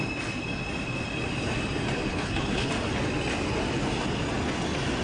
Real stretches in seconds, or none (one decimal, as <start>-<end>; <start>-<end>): 0.0-2.1; 2.7-5.0